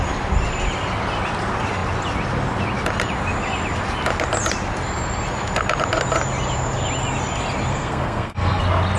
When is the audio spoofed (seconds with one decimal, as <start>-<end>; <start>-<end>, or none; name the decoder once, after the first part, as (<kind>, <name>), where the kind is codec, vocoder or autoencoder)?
7.7-8.6 (codec, SNAC)